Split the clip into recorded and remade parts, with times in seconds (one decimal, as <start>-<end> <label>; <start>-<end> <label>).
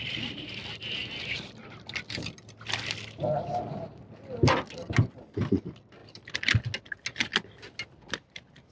0.0-8.7 recorded